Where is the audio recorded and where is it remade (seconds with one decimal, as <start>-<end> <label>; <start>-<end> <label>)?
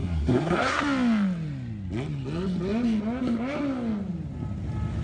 0.0-0.8 remade; 0.8-5.0 recorded